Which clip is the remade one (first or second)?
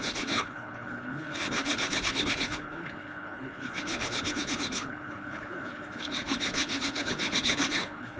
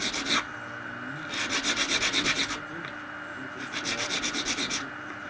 first